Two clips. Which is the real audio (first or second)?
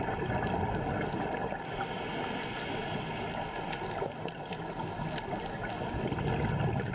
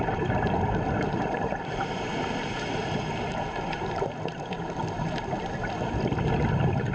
first